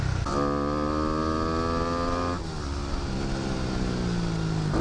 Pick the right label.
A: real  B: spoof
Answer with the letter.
A